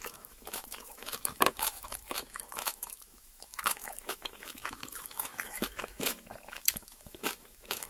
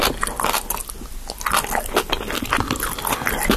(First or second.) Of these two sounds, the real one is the second